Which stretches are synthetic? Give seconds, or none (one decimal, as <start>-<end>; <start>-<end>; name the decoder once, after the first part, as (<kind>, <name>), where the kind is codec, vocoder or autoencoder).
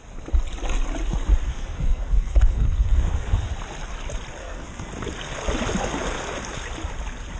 1.5-3.5 (codec, SNAC); 4.4-4.9